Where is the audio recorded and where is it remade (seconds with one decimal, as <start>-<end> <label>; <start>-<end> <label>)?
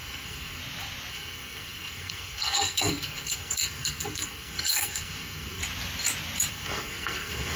0.0-0.6 remade; 0.6-1.1 recorded; 1.1-5.6 remade; 5.6-6.5 recorded; 6.5-7.6 remade